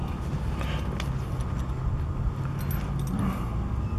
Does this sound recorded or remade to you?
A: recorded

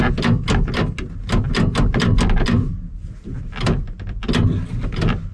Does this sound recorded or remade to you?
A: recorded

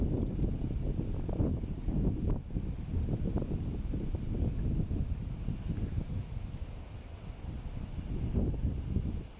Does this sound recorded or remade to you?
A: recorded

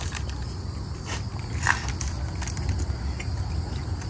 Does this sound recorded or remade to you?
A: recorded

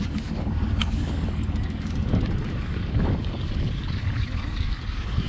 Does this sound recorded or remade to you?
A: remade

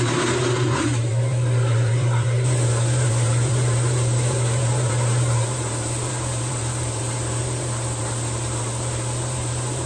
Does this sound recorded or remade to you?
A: remade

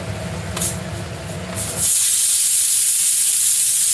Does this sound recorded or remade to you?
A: recorded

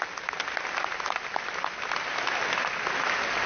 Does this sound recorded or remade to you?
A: recorded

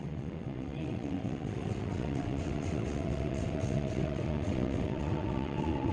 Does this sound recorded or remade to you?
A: remade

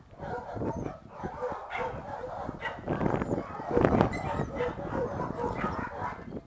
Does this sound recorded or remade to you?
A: recorded